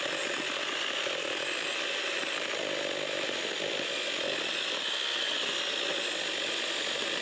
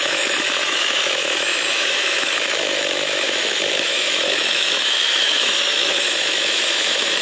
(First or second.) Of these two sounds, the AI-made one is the second